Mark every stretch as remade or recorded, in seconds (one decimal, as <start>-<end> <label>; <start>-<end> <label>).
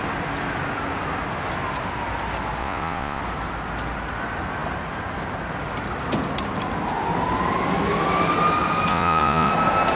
0.0-2.6 recorded; 2.6-3.2 remade; 3.2-8.9 recorded; 8.9-9.5 remade; 9.5-10.0 recorded